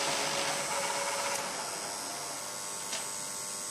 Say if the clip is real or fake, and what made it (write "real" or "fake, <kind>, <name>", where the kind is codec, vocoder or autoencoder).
real